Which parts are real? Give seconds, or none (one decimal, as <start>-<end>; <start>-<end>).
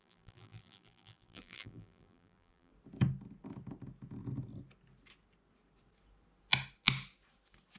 2.7-7.8